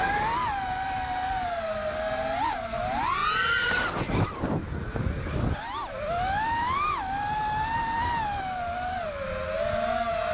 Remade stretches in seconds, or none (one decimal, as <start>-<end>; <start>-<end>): none

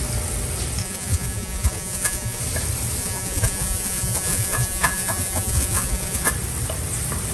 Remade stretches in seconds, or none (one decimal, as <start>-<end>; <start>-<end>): 0.8-2.4; 3.0-6.3

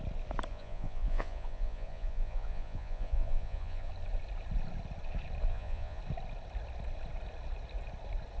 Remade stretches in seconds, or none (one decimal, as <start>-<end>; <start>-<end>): 0.5-3.9; 5.5-6.0

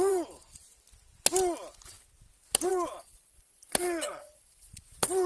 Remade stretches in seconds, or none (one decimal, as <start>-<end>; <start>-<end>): 0.0-0.6; 2.7-5.3